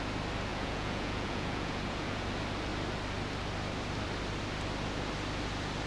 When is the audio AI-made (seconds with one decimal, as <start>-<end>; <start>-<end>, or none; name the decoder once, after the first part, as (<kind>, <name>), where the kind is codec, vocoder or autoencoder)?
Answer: 0.5-2.2 (vocoder, Vocos)